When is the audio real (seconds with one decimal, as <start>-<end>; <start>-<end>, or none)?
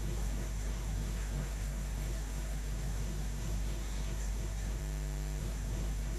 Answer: 4.8-5.4